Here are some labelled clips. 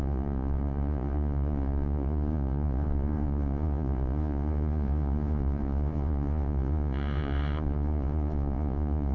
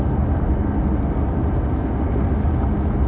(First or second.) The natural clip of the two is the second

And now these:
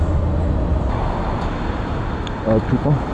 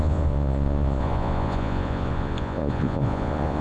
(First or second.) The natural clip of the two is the first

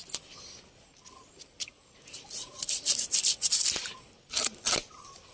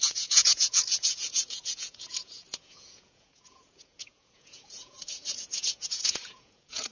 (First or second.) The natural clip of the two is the first